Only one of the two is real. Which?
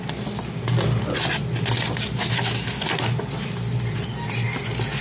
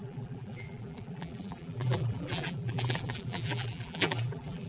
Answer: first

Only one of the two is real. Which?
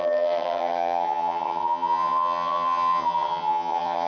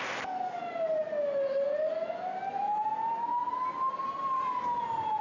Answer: second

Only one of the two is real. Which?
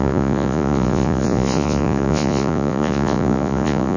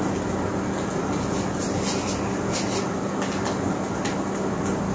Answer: second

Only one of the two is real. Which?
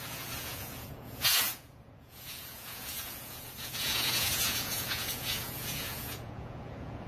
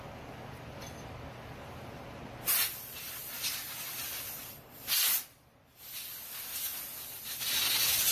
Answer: second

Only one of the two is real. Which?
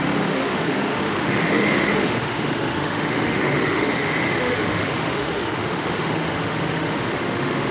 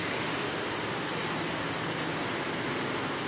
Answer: second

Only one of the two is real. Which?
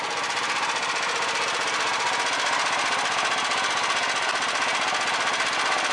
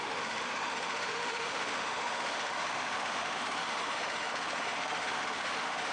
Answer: first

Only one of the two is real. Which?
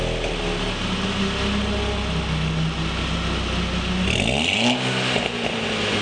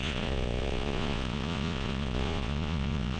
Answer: first